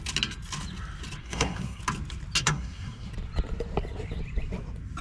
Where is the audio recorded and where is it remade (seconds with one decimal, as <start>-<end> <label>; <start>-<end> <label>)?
0.0-1.2 recorded; 1.2-1.8 remade; 1.8-2.4 recorded; 2.4-3.1 remade; 3.1-5.0 recorded